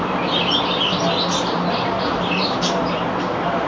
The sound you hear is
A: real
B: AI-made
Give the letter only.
A